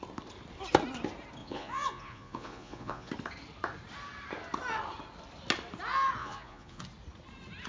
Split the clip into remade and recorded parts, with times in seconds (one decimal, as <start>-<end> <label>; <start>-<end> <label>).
0.0-1.4 recorded; 1.4-3.1 remade; 3.1-6.2 recorded; 6.2-6.8 remade; 6.8-7.7 recorded